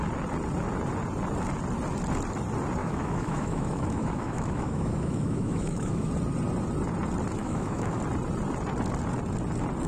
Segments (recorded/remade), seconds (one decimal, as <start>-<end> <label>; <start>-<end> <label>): 0.0-2.8 recorded; 2.8-6.1 remade; 6.1-7.4 recorded; 7.4-8.0 remade; 8.0-9.9 recorded